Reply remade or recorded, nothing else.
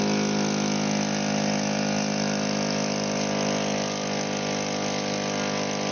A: recorded